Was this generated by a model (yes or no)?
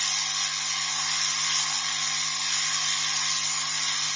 no